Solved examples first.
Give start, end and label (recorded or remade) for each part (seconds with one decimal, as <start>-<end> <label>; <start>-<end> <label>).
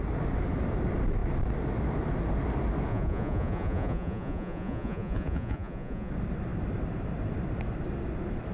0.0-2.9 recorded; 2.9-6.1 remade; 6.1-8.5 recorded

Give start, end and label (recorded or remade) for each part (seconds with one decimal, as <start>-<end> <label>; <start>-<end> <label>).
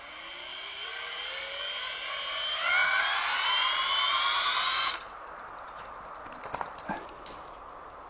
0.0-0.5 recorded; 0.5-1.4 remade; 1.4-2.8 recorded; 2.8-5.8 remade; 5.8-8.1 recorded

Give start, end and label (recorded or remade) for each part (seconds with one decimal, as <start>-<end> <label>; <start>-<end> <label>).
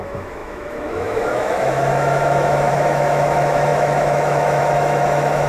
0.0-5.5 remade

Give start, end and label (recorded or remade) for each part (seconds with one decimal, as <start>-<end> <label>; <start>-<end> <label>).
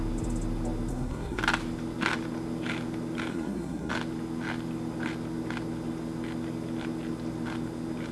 0.0-0.9 recorded; 0.9-1.4 remade; 1.4-3.3 recorded; 3.3-3.9 remade; 3.9-8.1 recorded